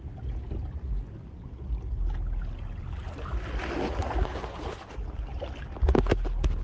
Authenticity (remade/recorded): recorded